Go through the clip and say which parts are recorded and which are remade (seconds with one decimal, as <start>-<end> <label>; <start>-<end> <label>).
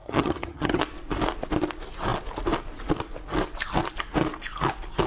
0.0-0.8 remade; 0.8-5.1 recorded